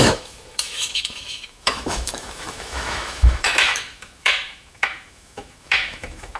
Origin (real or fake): fake